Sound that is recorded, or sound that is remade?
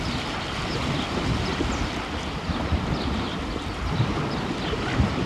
recorded